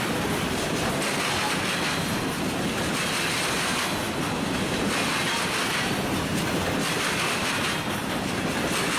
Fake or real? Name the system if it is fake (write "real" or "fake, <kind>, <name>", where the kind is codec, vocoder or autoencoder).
real